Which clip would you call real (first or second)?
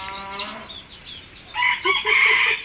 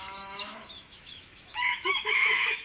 first